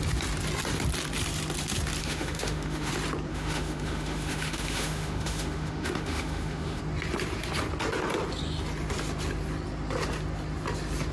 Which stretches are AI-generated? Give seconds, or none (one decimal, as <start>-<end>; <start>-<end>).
2.0-2.9; 3.3-6.8